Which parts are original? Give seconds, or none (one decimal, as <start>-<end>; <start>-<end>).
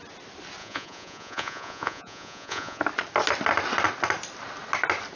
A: 0.0-0.6; 2.8-5.2